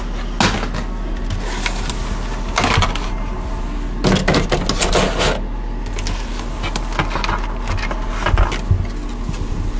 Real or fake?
real